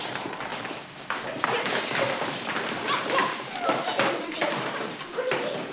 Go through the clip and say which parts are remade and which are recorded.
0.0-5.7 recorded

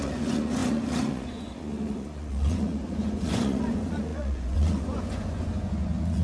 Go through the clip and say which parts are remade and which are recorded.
0.0-6.2 remade

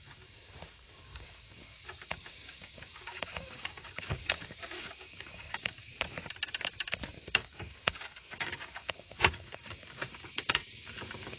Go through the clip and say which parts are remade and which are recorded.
0.0-5.9 remade; 5.9-7.2 recorded; 7.2-11.4 remade

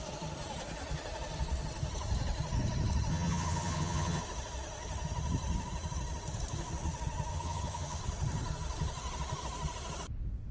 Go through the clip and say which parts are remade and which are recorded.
0.0-3.1 recorded; 3.1-4.2 remade; 4.2-7.3 recorded; 7.3-8.0 remade; 8.0-10.5 recorded